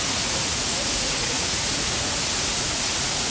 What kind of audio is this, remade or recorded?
remade